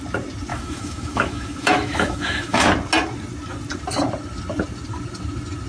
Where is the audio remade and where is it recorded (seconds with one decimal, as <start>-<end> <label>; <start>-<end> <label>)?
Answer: 0.0-0.5 recorded; 0.5-2.6 remade; 2.6-5.7 recorded